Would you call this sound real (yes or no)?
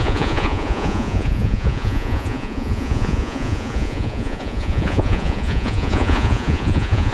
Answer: no